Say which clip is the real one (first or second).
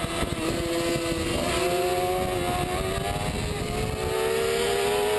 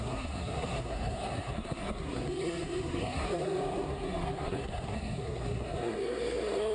first